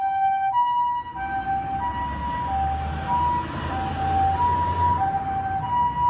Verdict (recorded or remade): recorded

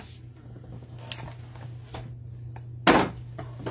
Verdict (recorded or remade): recorded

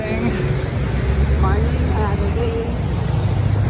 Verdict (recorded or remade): recorded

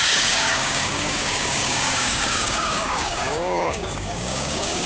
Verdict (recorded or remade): remade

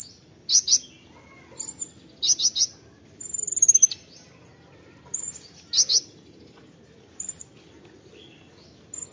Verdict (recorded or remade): recorded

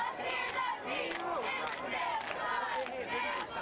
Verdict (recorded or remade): recorded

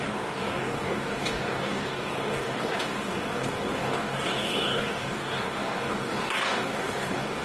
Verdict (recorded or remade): remade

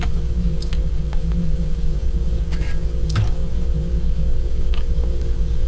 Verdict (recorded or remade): remade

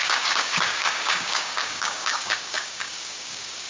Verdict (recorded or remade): remade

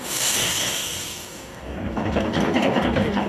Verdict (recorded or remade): remade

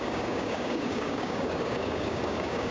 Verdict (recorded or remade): remade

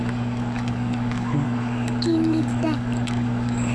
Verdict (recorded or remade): remade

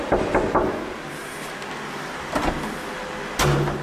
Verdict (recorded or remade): recorded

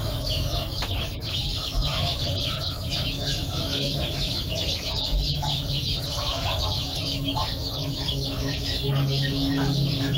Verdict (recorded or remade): remade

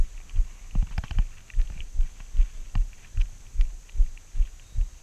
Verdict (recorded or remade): recorded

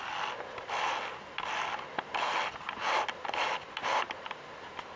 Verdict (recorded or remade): recorded